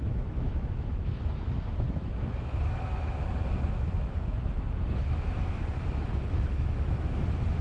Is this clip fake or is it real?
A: fake